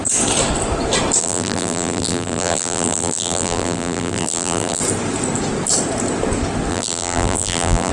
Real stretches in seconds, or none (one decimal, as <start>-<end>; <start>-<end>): 0.0-1.2; 4.8-6.7